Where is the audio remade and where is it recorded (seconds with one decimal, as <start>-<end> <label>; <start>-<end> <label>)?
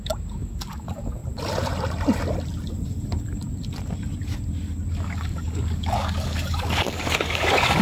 0.0-1.2 remade; 1.2-4.9 recorded; 4.9-7.8 remade